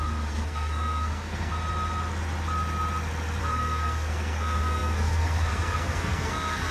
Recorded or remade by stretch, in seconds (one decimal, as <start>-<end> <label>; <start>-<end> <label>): 0.0-1.5 remade; 1.5-3.4 recorded; 3.4-6.7 remade

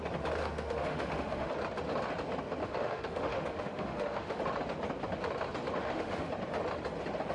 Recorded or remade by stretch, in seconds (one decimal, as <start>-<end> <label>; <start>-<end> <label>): 0.0-0.4 recorded; 0.4-1.5 remade; 1.5-2.6 recorded; 2.6-4.4 remade; 4.4-5.8 recorded; 5.8-6.3 remade; 6.3-7.3 recorded

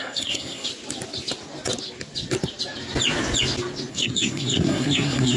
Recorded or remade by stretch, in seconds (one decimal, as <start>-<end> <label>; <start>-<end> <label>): 0.0-0.7 remade; 0.7-3.9 recorded; 3.9-5.4 remade

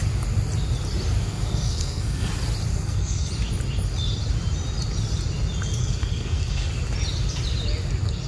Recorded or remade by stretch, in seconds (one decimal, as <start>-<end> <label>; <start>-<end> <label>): 0.0-1.2 recorded; 1.2-2.3 remade; 2.3-2.7 recorded; 2.7-3.3 remade; 3.3-5.8 recorded; 5.8-6.7 remade; 6.7-8.3 recorded

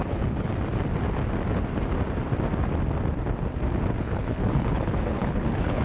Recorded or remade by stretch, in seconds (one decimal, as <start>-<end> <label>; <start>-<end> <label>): 0.0-0.5 remade; 0.5-4.0 recorded; 4.0-5.8 remade

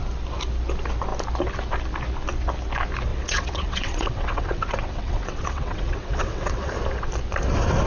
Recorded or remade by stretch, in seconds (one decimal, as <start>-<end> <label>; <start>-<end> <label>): 0.0-3.1 recorded; 3.1-6.7 remade; 6.7-7.9 recorded